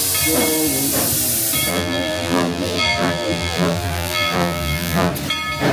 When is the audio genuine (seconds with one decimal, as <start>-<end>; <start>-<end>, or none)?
0.0-1.7; 5.1-5.7